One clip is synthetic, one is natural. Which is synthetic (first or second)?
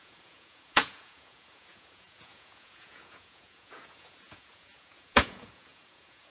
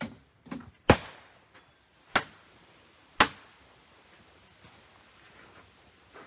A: first